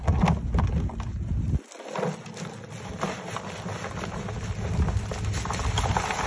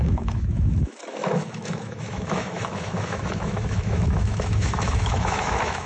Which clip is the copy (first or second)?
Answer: second